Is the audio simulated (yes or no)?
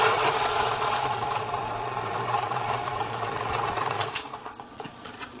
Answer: yes